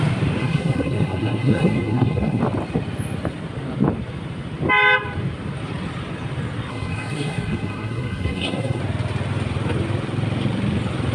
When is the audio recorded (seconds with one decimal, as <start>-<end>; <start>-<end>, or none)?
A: 0.0-0.4; 2.4-6.7; 8.8-11.1